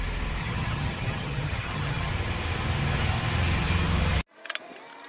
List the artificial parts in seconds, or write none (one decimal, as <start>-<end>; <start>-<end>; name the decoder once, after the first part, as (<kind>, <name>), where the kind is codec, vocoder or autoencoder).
0.4-2.1 (vocoder, HiFi-GAN)